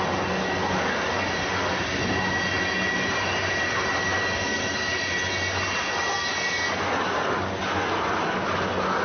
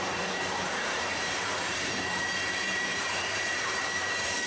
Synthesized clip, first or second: second